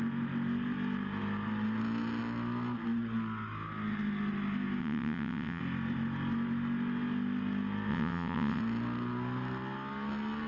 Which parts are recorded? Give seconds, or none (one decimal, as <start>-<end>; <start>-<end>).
0.0-4.8; 5.6-7.9; 8.6-10.5